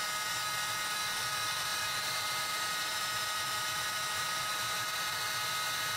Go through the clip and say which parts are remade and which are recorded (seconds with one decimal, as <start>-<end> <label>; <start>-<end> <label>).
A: 0.0-1.7 recorded; 1.7-5.3 remade; 5.3-6.0 recorded